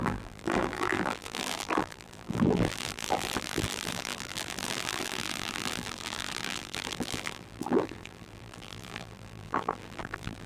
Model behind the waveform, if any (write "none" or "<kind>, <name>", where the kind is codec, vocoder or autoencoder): vocoder, BigVGAN v2